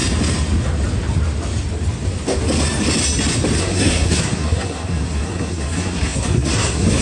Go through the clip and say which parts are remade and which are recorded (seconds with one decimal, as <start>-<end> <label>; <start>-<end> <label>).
0.0-3.6 recorded; 3.6-7.0 remade